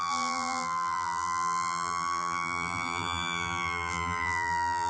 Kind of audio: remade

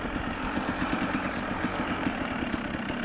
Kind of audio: remade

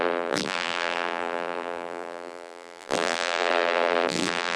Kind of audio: remade